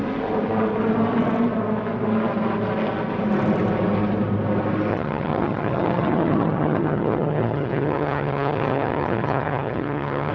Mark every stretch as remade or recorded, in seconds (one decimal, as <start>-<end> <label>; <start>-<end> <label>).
0.0-4.9 recorded; 4.9-10.3 remade